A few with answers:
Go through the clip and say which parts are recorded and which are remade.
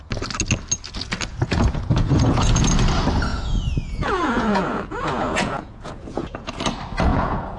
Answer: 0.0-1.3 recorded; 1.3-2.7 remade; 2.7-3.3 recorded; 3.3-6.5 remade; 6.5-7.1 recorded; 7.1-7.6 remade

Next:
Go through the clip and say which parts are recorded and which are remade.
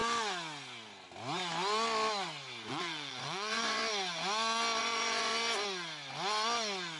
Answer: 0.0-2.7 recorded; 2.7-3.8 remade; 3.8-4.8 recorded; 4.8-5.3 remade; 5.3-7.0 recorded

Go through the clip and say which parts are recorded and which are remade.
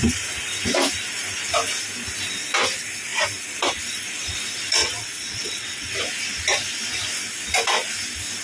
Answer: 0.0-4.8 recorded; 4.8-6.0 remade; 6.0-8.4 recorded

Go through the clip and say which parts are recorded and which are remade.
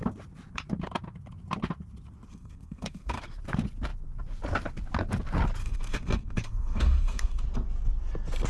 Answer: 0.0-2.3 recorded; 2.3-3.2 remade; 3.2-5.6 recorded; 5.6-7.4 remade; 7.4-8.5 recorded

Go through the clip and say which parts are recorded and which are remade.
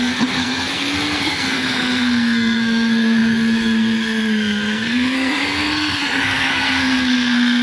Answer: 0.0-7.6 remade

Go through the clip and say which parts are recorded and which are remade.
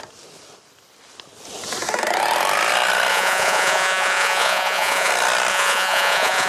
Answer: 0.0-3.1 recorded; 3.1-5.1 remade; 5.1-5.5 recorded; 5.5-6.5 remade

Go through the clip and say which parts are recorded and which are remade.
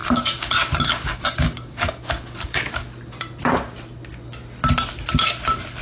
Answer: 0.0-2.6 remade; 2.6-5.8 recorded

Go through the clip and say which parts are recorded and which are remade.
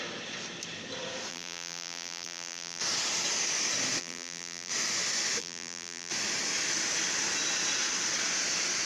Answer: 0.0-1.3 recorded; 1.3-2.8 remade; 2.8-4.0 recorded; 4.0-4.7 remade; 4.7-5.4 recorded; 5.4-6.1 remade; 6.1-8.9 recorded